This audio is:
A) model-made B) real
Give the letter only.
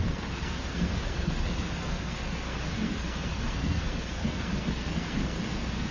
A